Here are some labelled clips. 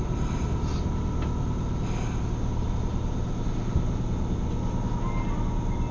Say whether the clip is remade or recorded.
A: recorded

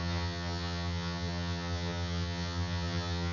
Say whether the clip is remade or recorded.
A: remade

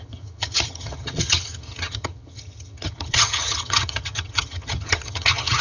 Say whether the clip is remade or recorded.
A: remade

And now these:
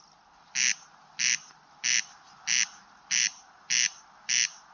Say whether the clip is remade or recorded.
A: recorded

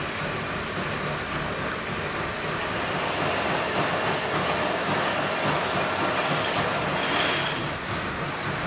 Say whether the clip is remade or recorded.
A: recorded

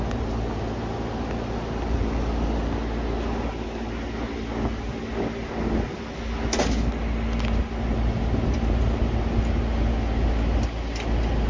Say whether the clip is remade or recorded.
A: recorded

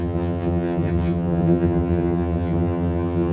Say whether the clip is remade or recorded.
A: remade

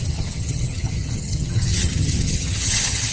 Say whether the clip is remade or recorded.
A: remade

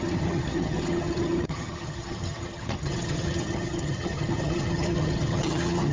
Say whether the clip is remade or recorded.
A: remade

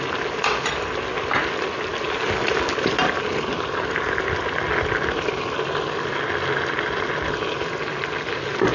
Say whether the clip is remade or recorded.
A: recorded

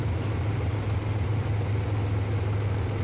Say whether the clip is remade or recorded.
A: recorded